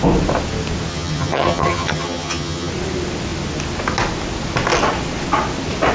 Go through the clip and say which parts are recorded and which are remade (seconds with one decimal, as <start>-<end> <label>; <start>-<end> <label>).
0.0-0.9 recorded; 0.9-2.7 remade; 2.7-5.9 recorded